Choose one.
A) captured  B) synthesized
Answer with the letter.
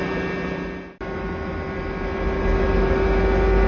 A